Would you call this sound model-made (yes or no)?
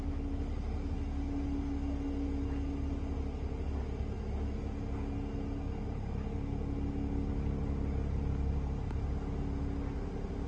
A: no